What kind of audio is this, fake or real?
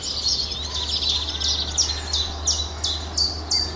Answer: real